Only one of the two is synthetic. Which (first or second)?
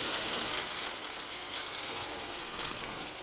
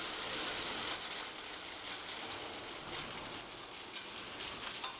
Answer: first